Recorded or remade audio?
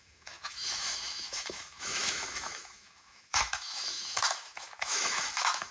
remade